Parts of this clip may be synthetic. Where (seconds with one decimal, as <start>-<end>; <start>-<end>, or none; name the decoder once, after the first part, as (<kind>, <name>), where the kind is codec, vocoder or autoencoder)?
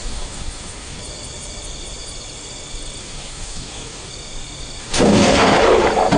0.0-1.0 (codec, DAC); 3.0-4.1; 4.8-5.6